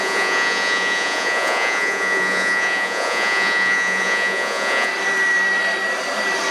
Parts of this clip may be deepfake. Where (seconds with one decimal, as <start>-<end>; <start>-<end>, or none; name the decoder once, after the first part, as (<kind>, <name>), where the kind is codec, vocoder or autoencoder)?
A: 0.0-4.9 (vocoder, Vocos)